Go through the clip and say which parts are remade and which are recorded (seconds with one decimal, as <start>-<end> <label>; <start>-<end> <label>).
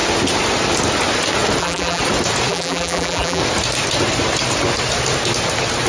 0.0-1.6 recorded; 1.6-2.0 remade; 2.0-2.5 recorded; 2.5-3.4 remade; 3.4-5.9 recorded